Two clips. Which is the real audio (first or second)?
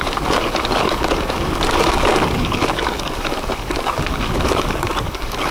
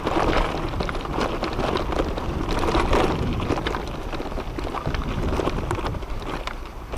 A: second